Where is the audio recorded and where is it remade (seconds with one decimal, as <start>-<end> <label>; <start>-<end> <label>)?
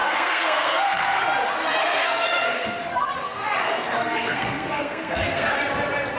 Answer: 0.0-1.2 remade; 1.2-1.8 recorded; 1.8-5.5 remade; 5.5-6.2 recorded